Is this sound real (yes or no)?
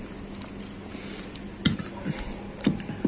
yes